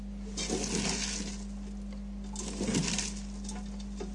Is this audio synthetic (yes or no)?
no